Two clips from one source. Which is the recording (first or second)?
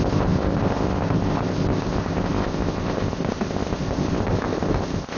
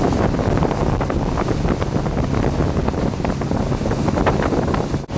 second